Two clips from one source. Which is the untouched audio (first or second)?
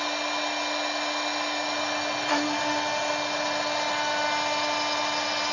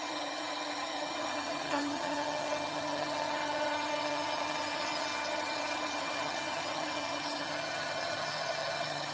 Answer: first